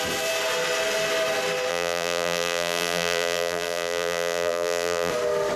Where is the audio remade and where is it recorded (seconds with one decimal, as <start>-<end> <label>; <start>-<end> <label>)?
0.0-1.7 recorded; 1.7-5.1 remade; 5.1-5.6 recorded